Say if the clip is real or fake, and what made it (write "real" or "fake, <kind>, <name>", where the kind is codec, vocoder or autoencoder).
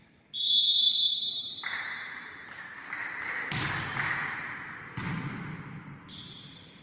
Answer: real